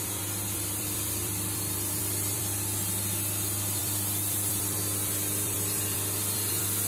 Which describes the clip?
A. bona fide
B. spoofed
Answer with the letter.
B